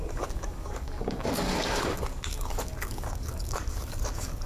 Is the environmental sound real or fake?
fake